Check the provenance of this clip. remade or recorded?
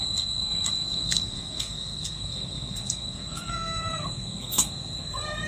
remade